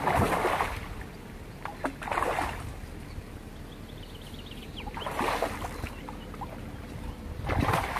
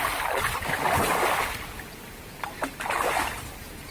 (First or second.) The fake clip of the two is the second